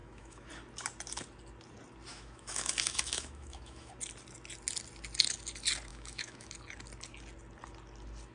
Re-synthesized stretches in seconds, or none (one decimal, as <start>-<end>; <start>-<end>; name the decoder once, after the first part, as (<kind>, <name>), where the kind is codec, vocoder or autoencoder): 0.0-0.5 (autoencoder, DAC-VAE); 2.1-3.9; 5.9-6.5